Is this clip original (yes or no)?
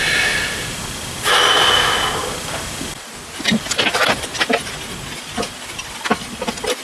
yes